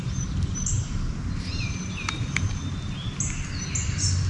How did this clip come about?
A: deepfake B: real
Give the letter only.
B